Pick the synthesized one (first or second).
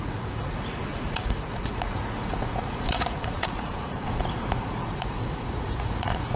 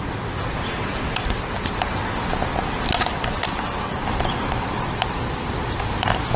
first